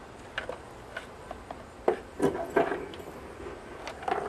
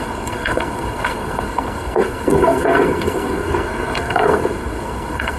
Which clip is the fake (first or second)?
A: second